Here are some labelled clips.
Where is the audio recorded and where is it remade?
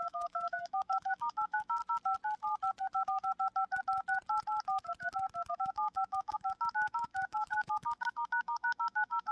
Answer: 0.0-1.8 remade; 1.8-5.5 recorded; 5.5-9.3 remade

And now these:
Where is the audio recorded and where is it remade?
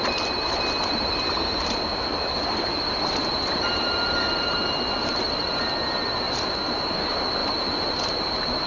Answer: 0.0-2.1 recorded; 2.1-5.5 remade; 5.5-8.7 recorded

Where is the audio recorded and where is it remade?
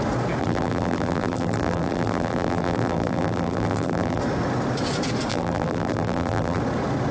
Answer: 0.0-0.4 recorded; 0.4-4.2 remade; 4.2-5.3 recorded; 5.3-6.6 remade; 6.6-7.1 recorded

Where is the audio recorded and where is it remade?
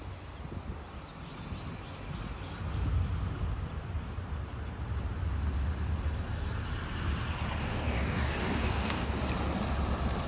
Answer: 0.0-7.7 recorded; 7.7-9.2 remade; 9.2-10.3 recorded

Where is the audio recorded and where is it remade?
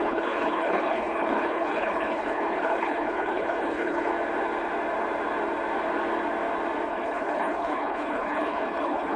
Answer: 0.0-4.1 remade; 4.1-6.9 recorded; 6.9-9.2 remade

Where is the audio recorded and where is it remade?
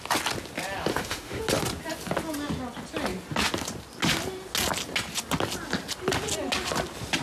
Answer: 0.0-0.9 recorded; 0.9-1.4 remade; 1.4-7.2 recorded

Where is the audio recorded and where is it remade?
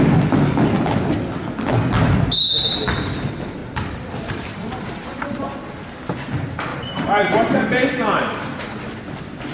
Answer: 0.0-3.6 recorded; 3.6-5.4 remade; 5.4-6.7 recorded; 6.7-8.8 remade; 8.8-9.5 recorded